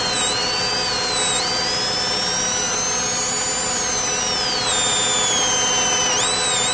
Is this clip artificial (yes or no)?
no